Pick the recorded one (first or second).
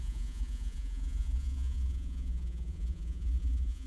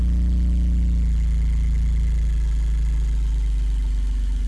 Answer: second